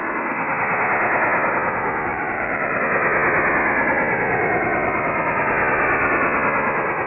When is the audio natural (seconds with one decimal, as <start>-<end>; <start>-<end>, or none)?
0.0-2.1; 2.8-7.1